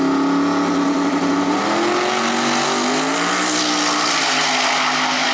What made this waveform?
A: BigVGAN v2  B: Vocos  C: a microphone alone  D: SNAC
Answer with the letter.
C